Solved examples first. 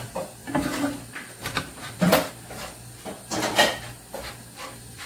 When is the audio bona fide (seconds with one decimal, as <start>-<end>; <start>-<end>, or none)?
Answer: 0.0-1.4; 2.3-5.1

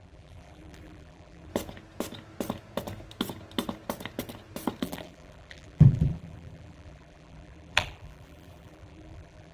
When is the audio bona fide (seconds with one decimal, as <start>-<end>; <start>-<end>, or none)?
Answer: 1.5-4.8

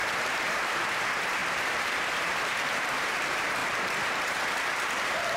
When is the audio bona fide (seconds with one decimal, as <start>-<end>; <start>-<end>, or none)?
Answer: 3.6-4.3

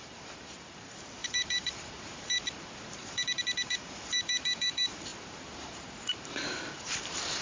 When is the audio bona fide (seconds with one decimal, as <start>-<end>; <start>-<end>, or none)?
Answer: none

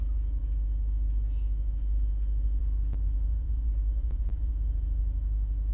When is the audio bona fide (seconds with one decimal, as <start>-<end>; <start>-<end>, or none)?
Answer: 0.0-3.3; 4.5-5.7